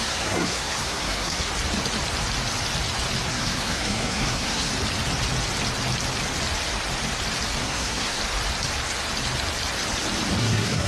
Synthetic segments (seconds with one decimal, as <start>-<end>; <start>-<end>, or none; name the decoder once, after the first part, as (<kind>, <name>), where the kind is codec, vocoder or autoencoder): 0.0-1.5 (codec, SNAC); 3.3-4.7; 7.6-8.2; 10.4-10.9